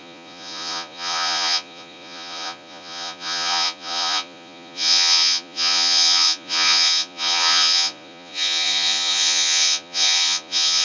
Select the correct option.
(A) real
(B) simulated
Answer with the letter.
B